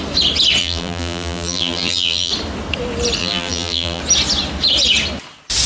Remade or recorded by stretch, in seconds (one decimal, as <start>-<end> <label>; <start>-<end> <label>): 0.0-0.6 recorded; 0.6-2.3 remade; 2.3-3.2 recorded; 3.2-4.0 remade; 4.0-5.7 recorded